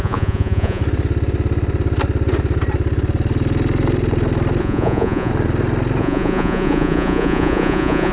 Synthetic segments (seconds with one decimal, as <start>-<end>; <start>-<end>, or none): 0.0-0.8; 4.6-5.3; 6.0-8.1